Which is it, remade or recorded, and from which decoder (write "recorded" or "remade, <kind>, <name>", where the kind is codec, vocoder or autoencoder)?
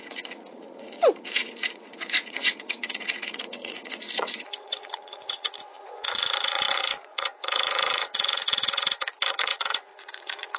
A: remade, vocoder, Vocos